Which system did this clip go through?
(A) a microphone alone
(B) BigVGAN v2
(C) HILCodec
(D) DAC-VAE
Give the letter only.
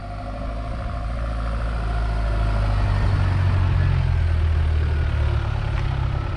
A